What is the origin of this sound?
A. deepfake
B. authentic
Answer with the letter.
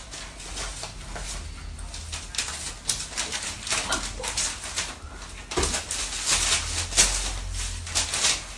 B